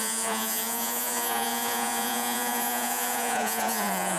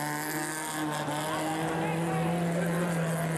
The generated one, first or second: first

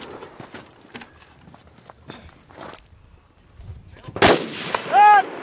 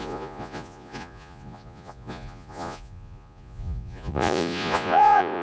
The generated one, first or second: second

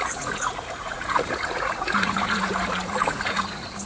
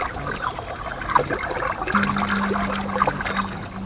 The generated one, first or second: first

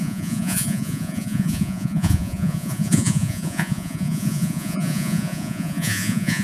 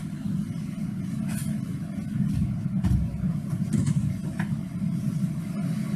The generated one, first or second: first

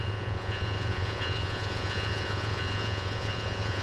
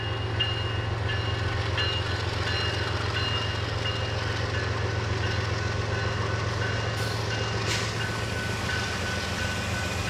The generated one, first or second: first